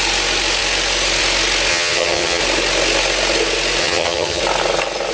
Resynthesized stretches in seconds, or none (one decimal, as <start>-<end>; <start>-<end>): 1.7-2.4; 3.8-4.4